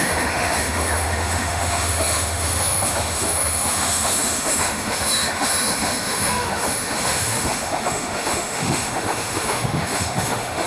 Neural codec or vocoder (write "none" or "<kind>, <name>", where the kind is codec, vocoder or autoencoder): autoencoder, DAC-VAE